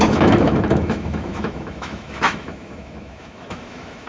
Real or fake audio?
fake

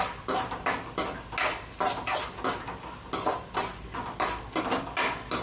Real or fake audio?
real